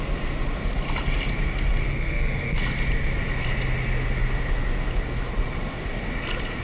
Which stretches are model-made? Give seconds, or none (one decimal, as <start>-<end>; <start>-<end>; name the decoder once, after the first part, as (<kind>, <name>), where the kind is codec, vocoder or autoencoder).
1.7-2.6 (codec, SNAC)